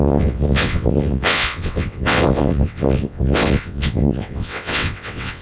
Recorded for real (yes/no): no